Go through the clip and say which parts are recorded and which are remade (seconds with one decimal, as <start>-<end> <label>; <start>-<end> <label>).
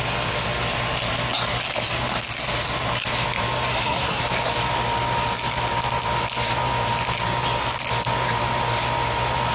0.0-3.7 recorded; 3.7-4.2 remade; 4.2-9.5 recorded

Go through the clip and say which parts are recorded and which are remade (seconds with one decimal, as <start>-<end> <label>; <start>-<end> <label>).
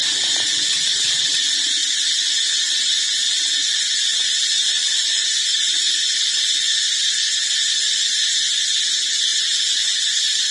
0.0-10.5 recorded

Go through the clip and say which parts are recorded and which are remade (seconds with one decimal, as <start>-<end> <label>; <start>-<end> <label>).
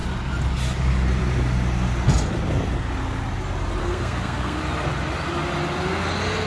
0.0-3.8 recorded; 3.8-4.6 remade; 4.6-6.5 recorded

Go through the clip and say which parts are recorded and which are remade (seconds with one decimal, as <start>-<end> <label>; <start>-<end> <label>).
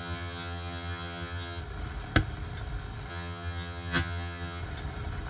0.0-1.6 remade; 1.6-3.1 recorded; 3.1-4.6 remade; 4.6-5.3 recorded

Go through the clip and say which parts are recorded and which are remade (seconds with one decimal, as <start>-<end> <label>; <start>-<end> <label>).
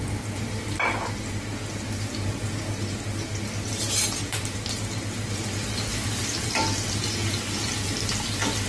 0.0-5.9 recorded; 5.9-6.6 remade; 6.6-8.7 recorded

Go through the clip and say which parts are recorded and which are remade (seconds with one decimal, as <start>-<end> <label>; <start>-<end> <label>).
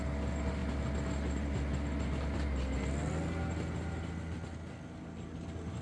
0.0-5.8 recorded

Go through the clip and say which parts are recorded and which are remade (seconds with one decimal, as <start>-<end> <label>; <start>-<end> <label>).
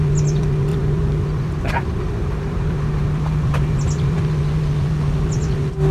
0.0-0.7 recorded; 0.7-4.2 remade; 4.2-5.9 recorded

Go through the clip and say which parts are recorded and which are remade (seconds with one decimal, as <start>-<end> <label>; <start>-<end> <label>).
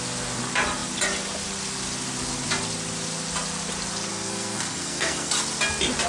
0.0-4.1 recorded; 4.1-5.3 remade; 5.3-6.1 recorded